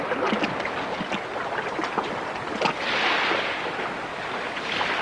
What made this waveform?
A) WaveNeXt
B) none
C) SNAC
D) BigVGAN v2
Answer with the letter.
B